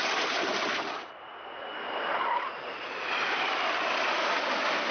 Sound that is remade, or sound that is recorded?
recorded